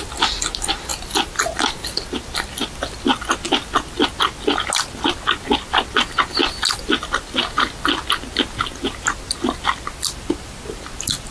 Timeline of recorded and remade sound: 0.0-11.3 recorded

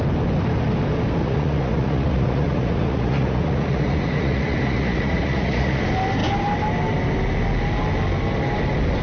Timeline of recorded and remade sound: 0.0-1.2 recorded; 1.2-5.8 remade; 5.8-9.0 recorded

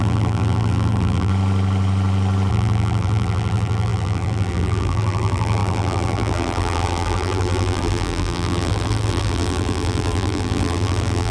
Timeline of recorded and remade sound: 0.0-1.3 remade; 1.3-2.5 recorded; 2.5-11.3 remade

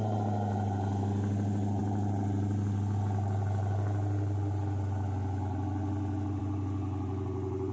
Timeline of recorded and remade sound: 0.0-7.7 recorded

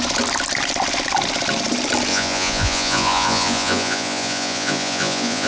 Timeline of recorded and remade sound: 0.0-2.1 recorded; 2.1-5.5 remade